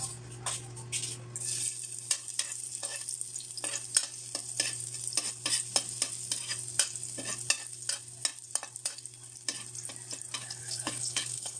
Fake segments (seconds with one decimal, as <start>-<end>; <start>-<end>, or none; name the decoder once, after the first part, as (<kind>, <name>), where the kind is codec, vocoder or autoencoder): 10.4-11.6 (codec, HILCodec)